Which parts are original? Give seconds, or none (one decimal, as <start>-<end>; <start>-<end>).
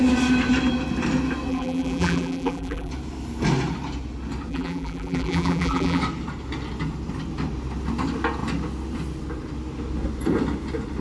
0.0-1.5; 2.9-4.5; 6.0-11.0